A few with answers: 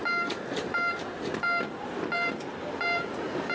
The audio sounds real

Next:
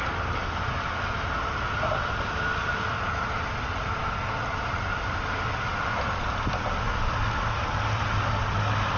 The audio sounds real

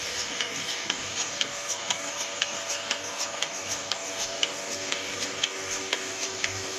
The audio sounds fake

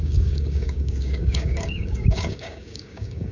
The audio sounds fake